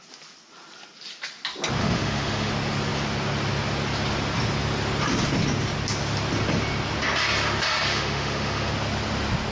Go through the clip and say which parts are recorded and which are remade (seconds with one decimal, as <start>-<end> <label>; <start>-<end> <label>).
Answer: 0.0-1.8 recorded; 1.8-2.5 remade; 2.5-7.9 recorded; 7.9-8.7 remade; 8.7-9.5 recorded